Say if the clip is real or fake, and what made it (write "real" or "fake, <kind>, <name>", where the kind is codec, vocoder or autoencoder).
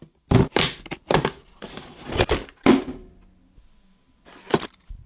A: real